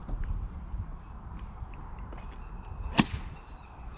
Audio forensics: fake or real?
real